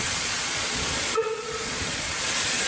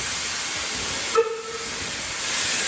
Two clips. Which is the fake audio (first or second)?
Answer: first